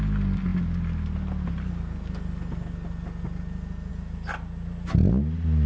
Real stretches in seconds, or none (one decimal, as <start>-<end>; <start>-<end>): 0.0-5.7